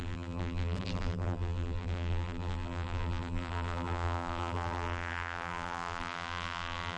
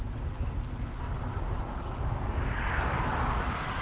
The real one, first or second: second